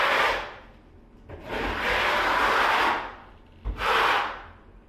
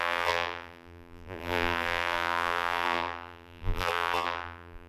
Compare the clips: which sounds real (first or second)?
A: first